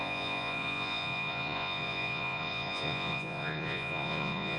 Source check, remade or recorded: remade